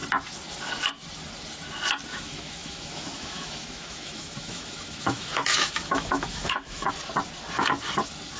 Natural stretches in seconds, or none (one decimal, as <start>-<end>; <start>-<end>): 0.0-2.1; 6.9-8.4